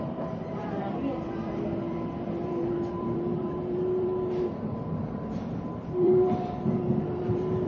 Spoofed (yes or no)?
yes